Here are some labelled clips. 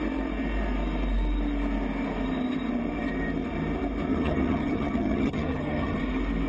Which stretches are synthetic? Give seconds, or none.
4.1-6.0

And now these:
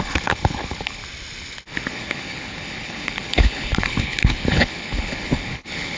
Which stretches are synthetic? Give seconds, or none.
0.0-1.0; 1.9-6.0

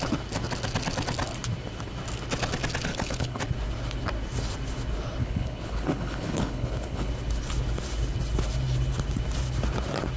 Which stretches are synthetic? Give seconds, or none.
2.9-3.4; 5.2-7.1

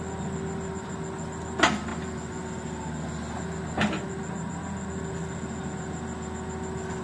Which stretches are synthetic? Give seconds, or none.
none

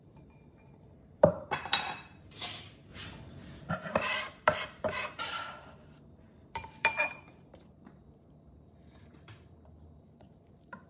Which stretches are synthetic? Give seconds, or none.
0.0-2.9; 3.7-10.9

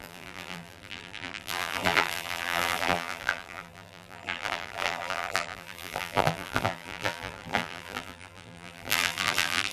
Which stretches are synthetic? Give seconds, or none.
0.0-9.7